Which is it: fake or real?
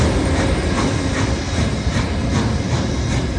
fake